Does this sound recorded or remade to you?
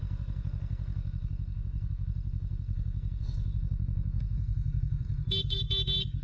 remade